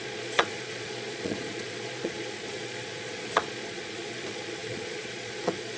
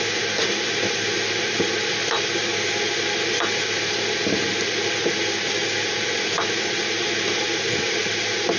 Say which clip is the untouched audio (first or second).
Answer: second